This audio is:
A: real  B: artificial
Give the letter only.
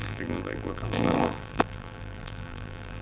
B